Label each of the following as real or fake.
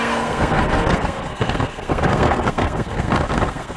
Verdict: fake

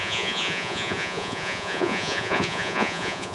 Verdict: fake